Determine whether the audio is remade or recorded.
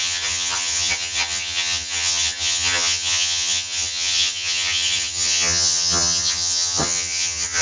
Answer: remade